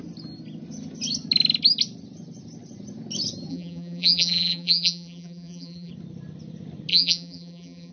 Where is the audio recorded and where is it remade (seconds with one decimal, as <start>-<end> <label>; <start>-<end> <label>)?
0.0-3.5 recorded; 3.5-5.9 remade; 5.9-6.9 recorded; 6.9-7.9 remade